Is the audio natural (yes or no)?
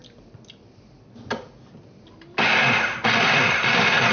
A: yes